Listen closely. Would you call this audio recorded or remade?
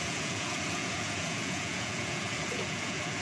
remade